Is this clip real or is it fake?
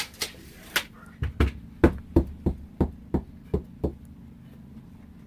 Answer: real